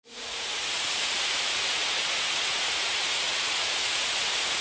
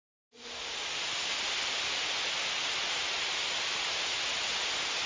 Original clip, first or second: second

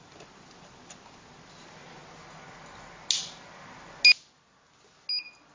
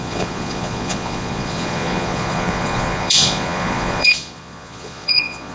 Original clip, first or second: first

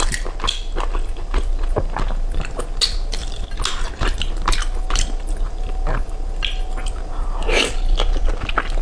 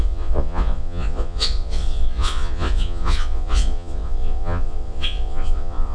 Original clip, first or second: first